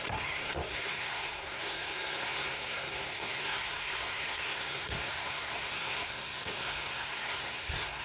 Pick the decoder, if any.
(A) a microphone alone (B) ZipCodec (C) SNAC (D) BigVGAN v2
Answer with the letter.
C